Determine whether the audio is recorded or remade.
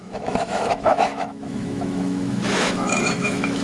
remade